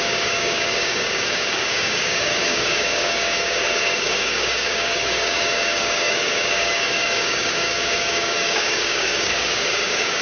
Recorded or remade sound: remade